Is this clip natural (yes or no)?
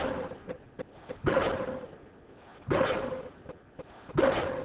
yes